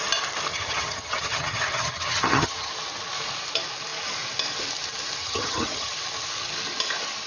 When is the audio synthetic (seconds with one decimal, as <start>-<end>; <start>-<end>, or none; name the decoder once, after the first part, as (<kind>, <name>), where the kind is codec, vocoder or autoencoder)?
0.5-2.7 (vocoder, HiFi-GAN); 5.2-5.9